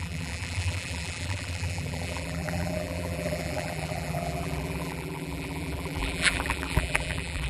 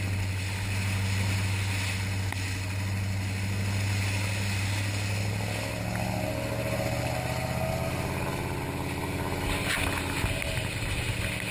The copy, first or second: first